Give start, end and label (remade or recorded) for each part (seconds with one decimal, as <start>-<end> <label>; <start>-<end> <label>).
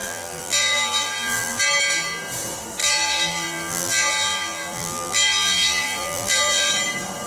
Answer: 0.0-1.6 remade; 1.6-2.8 recorded; 2.8-6.7 remade; 6.7-7.3 recorded